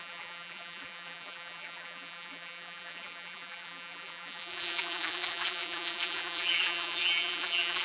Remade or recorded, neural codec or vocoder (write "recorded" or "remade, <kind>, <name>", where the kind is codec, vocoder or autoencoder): remade, vocoder, BigVGAN v2